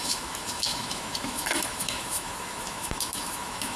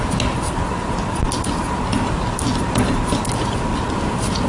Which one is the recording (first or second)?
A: second